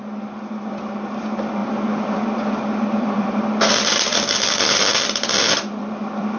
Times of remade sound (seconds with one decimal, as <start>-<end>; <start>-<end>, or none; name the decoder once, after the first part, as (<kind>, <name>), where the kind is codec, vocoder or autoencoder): 0.0-6.4 (vocoder, BigVGAN v2)